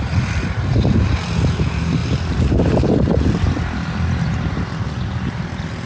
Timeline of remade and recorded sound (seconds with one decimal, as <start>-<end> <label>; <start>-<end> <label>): 0.0-5.9 recorded